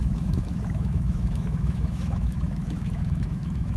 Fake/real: fake